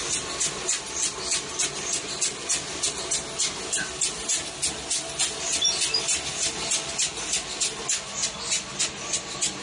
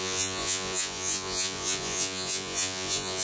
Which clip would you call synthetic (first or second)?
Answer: second